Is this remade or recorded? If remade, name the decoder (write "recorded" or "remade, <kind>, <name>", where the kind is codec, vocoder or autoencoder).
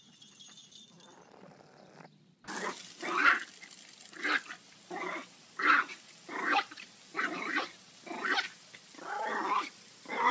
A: recorded